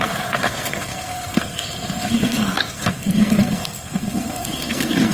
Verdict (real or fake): fake